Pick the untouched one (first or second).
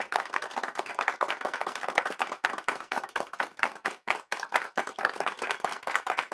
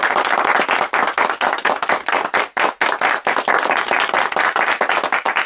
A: second